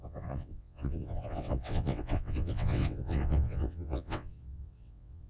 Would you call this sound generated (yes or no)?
yes